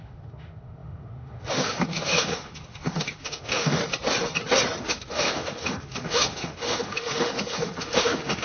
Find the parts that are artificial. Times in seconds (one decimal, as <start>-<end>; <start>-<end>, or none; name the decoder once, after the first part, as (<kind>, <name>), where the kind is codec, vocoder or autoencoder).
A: 0.0-3.8 (autoencoder, DAC-VAE); 4.8-8.4